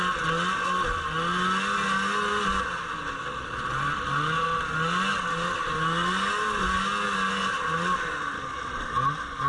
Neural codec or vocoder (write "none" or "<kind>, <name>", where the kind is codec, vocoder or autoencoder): none